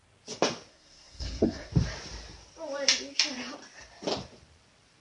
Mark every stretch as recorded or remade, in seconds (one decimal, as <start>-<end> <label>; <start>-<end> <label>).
0.0-0.7 recorded; 0.7-1.7 remade; 1.7-5.0 recorded